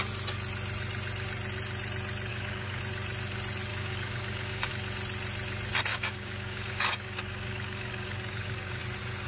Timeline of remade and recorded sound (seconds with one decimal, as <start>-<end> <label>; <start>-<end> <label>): 0.0-2.3 recorded; 2.3-2.8 remade; 2.8-3.7 recorded; 3.7-4.7 remade; 4.7-5.9 recorded; 5.9-8.8 remade; 8.8-9.3 recorded